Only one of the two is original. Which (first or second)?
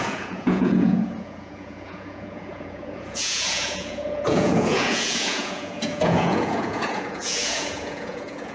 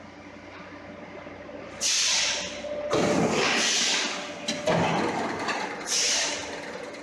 second